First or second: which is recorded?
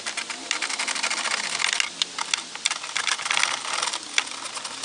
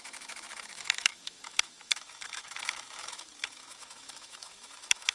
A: first